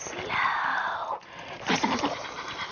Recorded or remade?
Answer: recorded